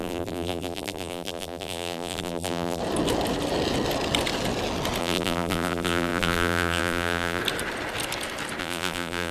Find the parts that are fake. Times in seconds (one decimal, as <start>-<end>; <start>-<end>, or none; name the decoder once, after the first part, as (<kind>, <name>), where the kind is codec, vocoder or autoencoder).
0.0-2.8 (vocoder, BigVGAN v2); 5.0-7.4; 8.6-9.3